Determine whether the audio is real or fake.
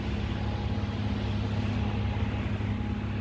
real